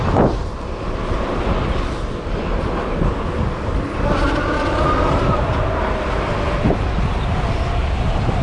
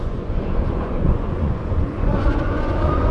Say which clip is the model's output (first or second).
second